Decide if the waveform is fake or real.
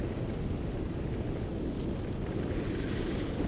real